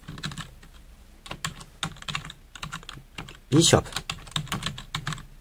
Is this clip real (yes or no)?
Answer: yes